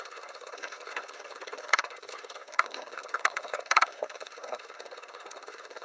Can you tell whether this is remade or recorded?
remade